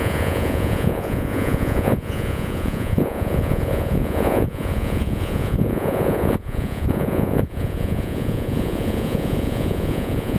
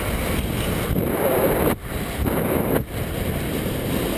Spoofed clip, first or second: first